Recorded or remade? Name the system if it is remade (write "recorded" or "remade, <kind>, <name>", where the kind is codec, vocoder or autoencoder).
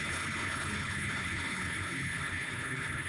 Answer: remade, codec, HILCodec